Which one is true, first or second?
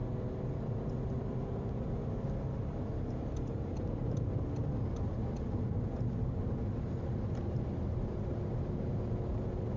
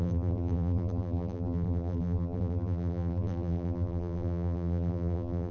first